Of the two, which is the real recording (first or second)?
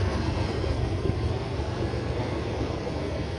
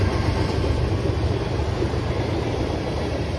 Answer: second